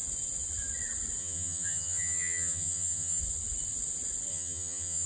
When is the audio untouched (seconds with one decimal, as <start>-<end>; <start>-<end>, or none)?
0.0-1.2; 3.2-4.3